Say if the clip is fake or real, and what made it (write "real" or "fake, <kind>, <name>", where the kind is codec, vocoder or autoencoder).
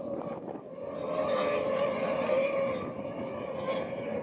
real